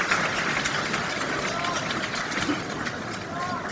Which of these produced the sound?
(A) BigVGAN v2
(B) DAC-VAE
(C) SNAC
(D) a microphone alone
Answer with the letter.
D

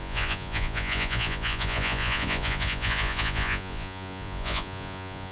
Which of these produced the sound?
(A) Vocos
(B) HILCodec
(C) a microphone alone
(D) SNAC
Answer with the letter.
A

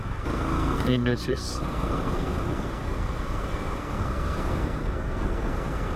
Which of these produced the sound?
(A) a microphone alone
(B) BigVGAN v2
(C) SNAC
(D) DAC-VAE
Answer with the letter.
C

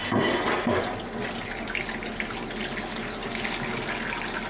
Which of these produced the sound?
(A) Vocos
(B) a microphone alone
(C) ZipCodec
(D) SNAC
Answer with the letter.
B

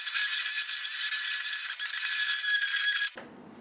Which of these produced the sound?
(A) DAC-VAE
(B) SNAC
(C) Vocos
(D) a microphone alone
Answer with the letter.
D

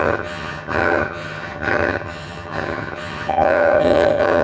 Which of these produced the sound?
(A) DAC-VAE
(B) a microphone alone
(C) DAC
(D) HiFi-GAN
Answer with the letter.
D